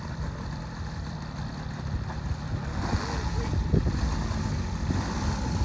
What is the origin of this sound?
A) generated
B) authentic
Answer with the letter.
B